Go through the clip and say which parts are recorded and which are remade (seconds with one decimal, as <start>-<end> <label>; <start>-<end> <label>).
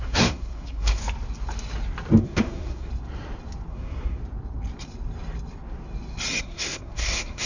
0.0-1.0 remade; 1.0-2.2 recorded; 2.2-2.9 remade; 2.9-3.7 recorded; 3.7-4.2 remade; 4.2-6.4 recorded; 6.4-7.5 remade